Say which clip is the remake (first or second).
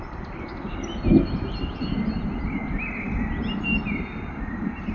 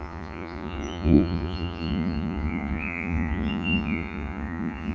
second